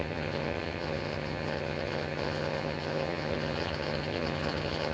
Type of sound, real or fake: fake